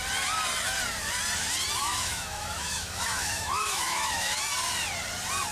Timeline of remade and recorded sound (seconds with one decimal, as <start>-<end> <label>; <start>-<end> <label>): 0.0-1.8 recorded; 1.8-4.4 remade; 4.4-5.5 recorded